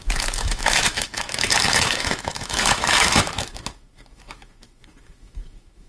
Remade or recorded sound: remade